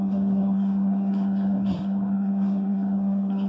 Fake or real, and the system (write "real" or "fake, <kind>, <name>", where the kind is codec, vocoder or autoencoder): fake, codec, SNAC